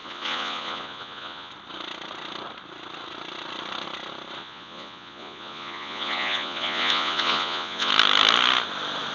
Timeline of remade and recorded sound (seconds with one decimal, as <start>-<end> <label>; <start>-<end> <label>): 0.0-1.5 remade; 1.5-4.4 recorded; 4.4-7.9 remade; 7.9-9.1 recorded